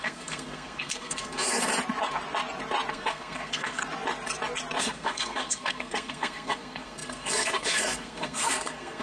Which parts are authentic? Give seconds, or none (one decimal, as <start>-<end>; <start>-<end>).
1.7-2.9; 3.8-4.8